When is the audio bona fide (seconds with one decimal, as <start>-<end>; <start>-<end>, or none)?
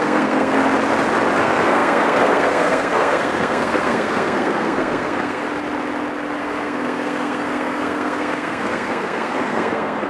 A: 0.6-1.4; 5.4-6.4